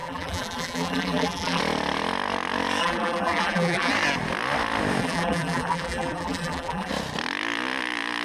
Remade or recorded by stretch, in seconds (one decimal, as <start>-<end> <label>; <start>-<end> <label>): 0.0-1.6 remade; 1.6-2.8 recorded; 2.8-3.9 remade; 3.9-5.0 recorded; 5.0-6.9 remade; 6.9-8.2 recorded